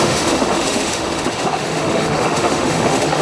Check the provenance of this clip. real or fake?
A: fake